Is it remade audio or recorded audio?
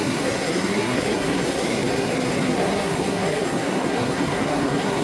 remade